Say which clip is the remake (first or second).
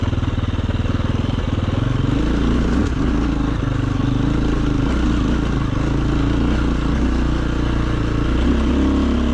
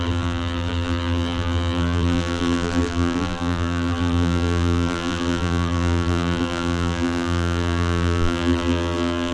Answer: second